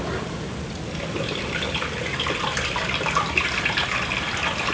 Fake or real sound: real